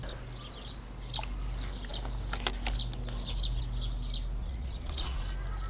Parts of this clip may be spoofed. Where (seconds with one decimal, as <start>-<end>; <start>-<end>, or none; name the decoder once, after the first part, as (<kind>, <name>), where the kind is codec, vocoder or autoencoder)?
4.4-5.2 (vocoder, Vocos)